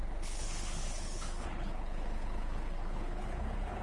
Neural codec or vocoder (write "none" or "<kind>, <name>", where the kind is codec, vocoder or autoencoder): codec, HILCodec